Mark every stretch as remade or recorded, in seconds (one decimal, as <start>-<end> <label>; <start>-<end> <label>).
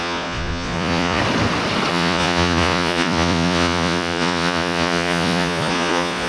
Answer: 0.0-1.2 remade; 1.2-1.9 recorded; 1.9-6.3 remade